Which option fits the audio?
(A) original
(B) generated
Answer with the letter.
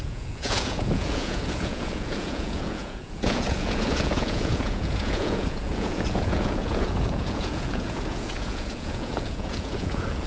B